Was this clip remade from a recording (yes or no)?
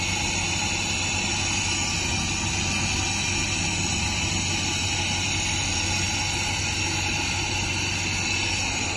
no